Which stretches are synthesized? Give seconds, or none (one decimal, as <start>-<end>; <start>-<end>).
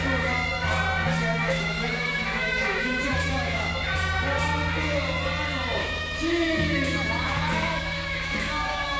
1.4-3.7; 5.8-9.0